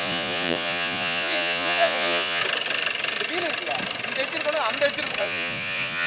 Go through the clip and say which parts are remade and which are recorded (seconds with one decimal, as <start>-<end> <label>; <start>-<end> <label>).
0.0-2.4 remade; 2.4-5.2 recorded; 5.2-6.1 remade